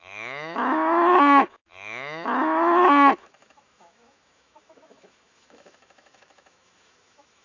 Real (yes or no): no